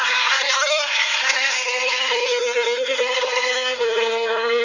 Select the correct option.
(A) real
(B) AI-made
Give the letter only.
B